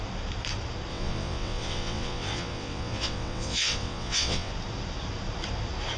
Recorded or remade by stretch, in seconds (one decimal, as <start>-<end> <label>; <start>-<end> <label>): 0.0-0.9 recorded; 0.9-4.5 remade; 4.5-6.0 recorded

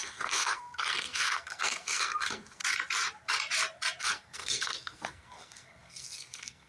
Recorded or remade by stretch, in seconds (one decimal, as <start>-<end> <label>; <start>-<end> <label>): 0.0-2.6 remade; 2.6-4.0 recorded; 4.0-6.7 remade

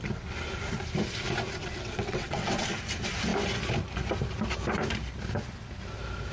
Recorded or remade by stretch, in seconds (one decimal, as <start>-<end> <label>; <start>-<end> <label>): 0.0-1.6 recorded; 1.6-2.7 remade; 2.7-6.3 recorded

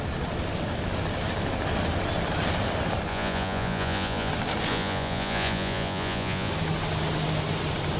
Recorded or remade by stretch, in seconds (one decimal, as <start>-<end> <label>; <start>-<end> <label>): 0.0-3.1 recorded; 3.1-4.3 remade; 4.3-4.7 recorded; 4.7-6.5 remade; 6.5-8.0 recorded

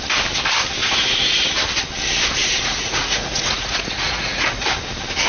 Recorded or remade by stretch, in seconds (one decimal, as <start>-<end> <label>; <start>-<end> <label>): 0.0-0.8 recorded; 0.8-1.5 remade; 1.5-2.4 recorded; 2.4-4.6 remade; 4.6-5.3 recorded

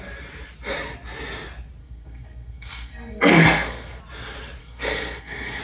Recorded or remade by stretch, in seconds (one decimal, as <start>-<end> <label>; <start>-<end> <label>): 0.0-1.8 recorded; 1.8-4.0 remade; 4.0-4.6 recorded; 4.6-5.6 remade